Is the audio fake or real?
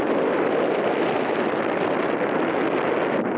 real